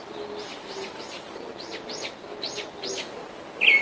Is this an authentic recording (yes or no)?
yes